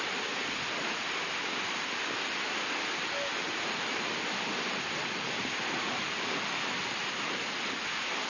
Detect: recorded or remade recorded